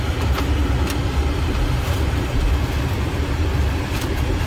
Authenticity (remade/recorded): recorded